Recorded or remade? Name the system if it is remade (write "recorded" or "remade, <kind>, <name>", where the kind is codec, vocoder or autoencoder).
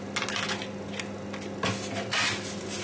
recorded